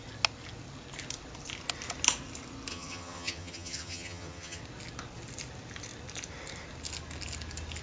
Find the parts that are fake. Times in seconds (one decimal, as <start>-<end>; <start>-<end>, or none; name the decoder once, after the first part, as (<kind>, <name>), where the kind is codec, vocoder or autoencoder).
2.7-4.6 (vocoder, HiFi-GAN)

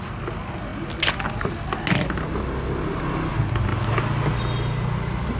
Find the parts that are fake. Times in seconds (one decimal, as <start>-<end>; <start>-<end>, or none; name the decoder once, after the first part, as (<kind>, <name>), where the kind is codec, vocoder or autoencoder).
none

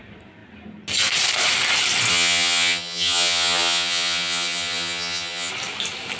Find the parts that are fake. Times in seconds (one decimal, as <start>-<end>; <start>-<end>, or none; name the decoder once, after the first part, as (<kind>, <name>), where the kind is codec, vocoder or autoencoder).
2.1-5.5 (vocoder, HiFi-GAN)

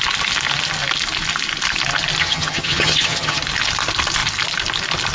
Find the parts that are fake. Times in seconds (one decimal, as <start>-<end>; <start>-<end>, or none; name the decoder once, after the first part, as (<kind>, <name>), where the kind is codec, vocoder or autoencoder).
2.2-3.4 (vocoder, HiFi-GAN)

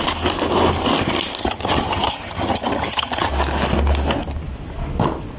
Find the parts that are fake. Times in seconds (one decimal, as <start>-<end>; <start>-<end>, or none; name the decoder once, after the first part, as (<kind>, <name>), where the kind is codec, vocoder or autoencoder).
1.4-3.3 (vocoder, HiFi-GAN)

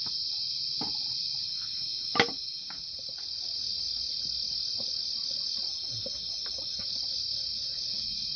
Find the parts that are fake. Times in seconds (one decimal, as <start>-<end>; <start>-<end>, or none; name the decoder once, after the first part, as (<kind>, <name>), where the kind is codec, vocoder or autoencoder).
none